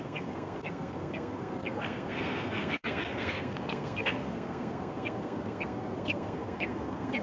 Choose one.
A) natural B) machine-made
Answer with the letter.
B